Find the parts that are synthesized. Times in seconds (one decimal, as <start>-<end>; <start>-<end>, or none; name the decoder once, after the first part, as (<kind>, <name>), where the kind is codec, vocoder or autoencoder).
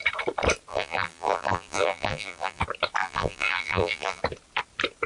0.7-2.6 (vocoder, BigVGAN v2); 3.0-4.2